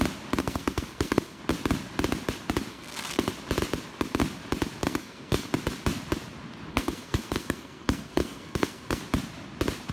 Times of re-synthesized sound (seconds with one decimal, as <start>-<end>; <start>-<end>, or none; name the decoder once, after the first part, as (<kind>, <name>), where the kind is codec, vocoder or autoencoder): 0.4-1.4 (codec, SNAC); 2.7-3.3; 4.8-5.5; 6.7-9.0